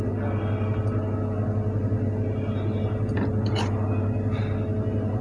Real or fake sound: real